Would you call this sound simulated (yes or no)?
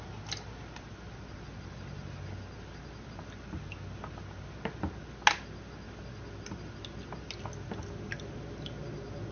no